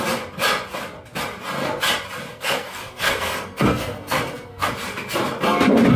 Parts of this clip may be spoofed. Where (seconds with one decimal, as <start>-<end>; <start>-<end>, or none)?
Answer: 2.3-4.7